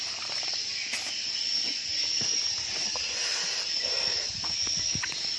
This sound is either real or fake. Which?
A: real